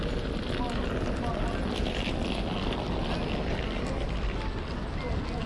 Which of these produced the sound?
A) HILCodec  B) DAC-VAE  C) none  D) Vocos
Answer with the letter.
C